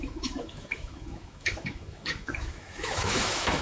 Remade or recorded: remade